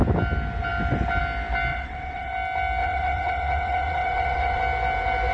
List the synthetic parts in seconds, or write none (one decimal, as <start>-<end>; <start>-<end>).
1.7-2.3; 2.8-4.6